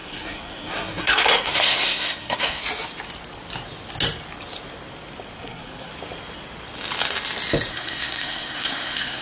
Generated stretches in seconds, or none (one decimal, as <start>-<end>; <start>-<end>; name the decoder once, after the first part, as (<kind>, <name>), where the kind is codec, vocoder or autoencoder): 0.0-2.6 (codec, SNAC); 5.4-5.9; 7.7-9.2